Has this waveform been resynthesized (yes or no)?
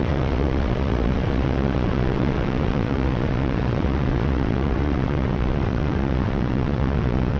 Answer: yes